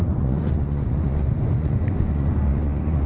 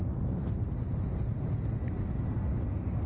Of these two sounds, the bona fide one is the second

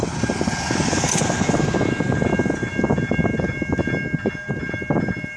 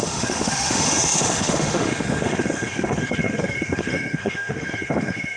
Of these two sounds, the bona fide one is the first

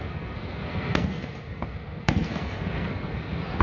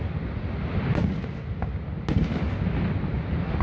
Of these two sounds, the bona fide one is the second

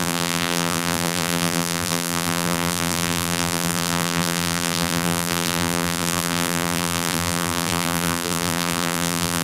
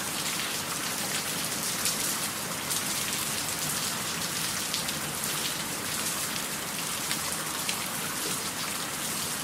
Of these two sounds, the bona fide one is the second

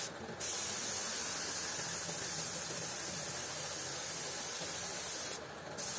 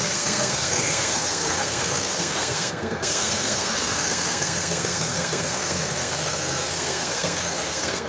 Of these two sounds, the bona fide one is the first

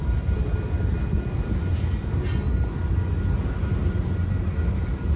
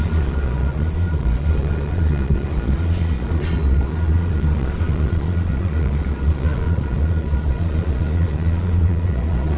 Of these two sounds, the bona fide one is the first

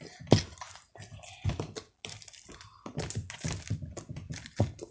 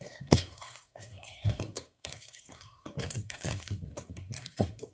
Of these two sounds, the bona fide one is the first